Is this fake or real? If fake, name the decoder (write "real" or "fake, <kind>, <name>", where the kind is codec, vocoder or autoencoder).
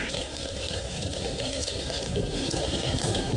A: fake, codec, SNAC